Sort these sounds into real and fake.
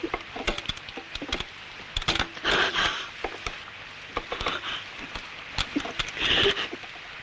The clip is real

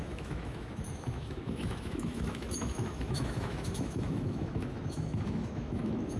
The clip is fake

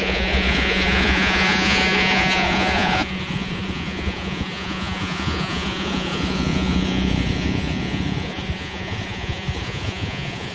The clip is fake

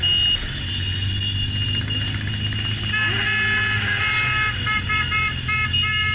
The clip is real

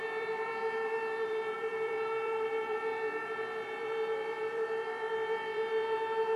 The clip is fake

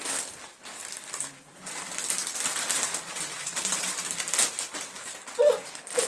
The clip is real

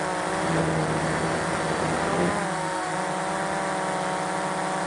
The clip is real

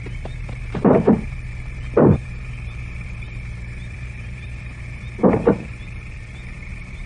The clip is fake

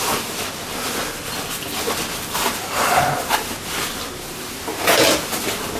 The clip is real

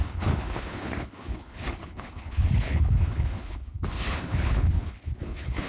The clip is fake